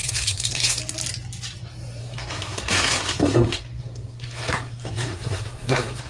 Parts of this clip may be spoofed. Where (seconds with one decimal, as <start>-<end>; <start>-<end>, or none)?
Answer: 0.0-0.8; 2.0-6.1